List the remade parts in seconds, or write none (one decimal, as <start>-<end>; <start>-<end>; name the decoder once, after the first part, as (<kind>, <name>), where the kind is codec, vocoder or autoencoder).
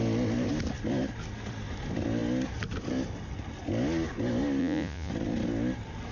4.6-5.1 (vocoder, Vocos)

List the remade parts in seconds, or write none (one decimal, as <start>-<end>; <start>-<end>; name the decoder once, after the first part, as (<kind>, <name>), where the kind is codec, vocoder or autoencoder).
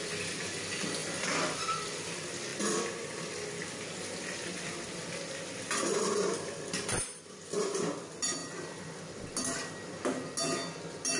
1.0-1.6 (vocoder, BigVGAN v2); 2.5-6.7; 8.4-9.0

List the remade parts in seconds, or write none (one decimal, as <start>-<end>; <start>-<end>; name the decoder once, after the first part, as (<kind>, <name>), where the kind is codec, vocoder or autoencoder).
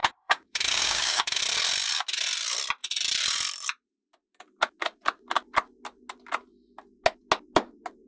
0.0-1.4 (codec, DAC)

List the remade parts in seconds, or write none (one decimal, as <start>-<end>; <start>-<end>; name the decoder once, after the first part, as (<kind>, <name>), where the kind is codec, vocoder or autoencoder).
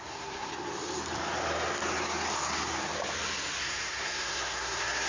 0.0-0.5 (codec, SNAC); 3.6-5.1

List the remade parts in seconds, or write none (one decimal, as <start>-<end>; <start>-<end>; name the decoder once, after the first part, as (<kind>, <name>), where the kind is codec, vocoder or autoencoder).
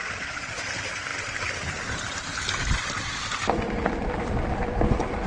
0.0-0.7 (vocoder, Vocos)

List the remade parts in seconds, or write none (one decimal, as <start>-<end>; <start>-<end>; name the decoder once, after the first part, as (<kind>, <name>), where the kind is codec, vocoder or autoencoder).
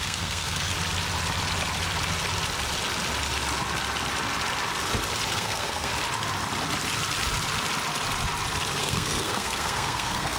0.0-0.7 (codec, SNAC); 5.3-5.9; 8.8-10.4